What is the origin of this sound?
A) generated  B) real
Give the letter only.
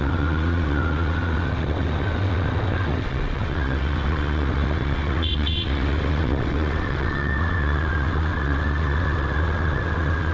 A